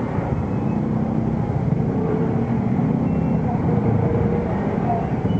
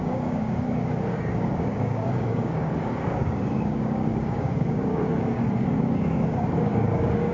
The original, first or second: first